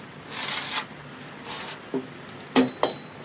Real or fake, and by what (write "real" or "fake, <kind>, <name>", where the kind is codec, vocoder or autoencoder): real